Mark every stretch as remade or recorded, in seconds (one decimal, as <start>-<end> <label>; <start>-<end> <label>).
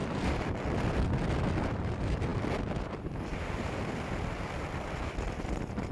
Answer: 0.0-5.9 recorded